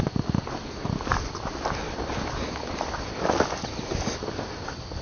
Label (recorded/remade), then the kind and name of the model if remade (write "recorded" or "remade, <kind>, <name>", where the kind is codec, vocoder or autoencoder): recorded